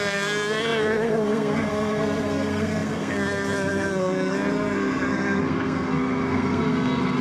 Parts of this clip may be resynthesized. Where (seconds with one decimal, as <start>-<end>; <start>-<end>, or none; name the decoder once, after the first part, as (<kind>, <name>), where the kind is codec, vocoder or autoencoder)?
0.0-7.2 (codec, SNAC)